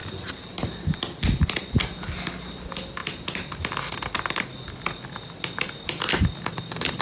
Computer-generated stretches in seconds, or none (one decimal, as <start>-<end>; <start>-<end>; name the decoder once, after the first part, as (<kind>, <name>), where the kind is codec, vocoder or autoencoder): none